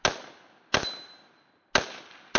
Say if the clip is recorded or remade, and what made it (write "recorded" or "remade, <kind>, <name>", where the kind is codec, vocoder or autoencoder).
recorded